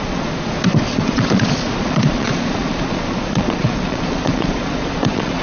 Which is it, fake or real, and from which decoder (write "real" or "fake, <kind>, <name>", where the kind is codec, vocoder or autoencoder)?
fake, vocoder, Vocos